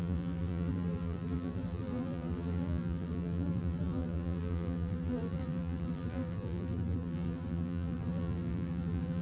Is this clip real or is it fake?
fake